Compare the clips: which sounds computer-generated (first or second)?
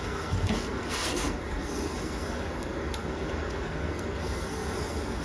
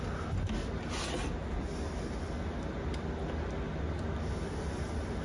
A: first